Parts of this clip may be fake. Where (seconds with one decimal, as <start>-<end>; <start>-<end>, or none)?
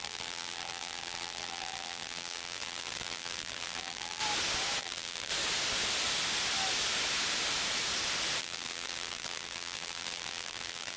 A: 0.0-4.2; 4.8-5.3; 8.4-11.0